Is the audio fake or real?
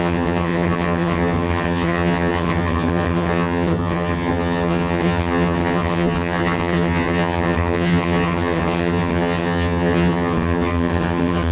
fake